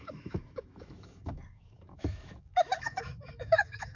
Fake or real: fake